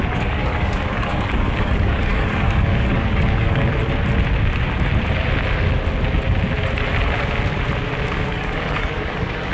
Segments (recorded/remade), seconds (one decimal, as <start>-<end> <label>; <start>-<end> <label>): 0.0-3.7 remade; 3.7-8.1 recorded; 8.1-9.5 remade